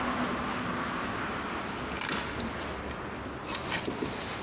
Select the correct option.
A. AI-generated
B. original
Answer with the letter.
B